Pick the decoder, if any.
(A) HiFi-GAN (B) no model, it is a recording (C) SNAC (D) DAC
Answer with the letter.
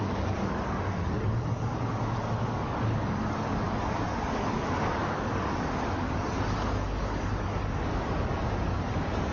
D